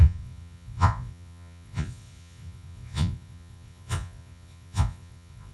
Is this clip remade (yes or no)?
yes